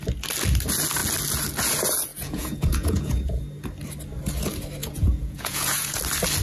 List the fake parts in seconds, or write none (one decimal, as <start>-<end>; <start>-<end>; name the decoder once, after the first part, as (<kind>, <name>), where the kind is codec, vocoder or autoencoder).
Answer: 2.1-3.3 (vocoder, Vocos); 4.8-6.0